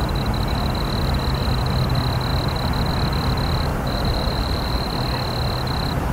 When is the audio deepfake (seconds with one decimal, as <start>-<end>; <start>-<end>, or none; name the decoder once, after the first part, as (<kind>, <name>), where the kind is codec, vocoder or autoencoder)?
3.7-4.9 (vocoder, BigVGAN v2)